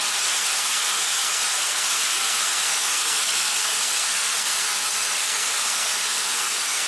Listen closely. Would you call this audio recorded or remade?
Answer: remade